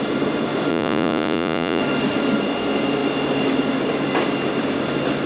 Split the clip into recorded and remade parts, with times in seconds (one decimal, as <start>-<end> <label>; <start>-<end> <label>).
0.0-0.7 recorded; 0.7-1.8 remade; 1.8-5.3 recorded